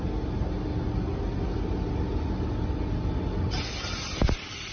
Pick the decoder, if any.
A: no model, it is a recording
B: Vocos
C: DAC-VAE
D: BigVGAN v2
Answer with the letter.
A